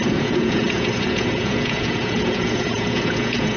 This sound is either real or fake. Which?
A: fake